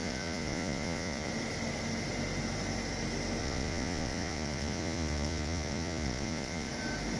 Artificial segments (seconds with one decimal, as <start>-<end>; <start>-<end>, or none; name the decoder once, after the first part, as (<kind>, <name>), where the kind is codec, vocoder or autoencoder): 0.0-1.3 (vocoder, Vocos); 3.4-6.7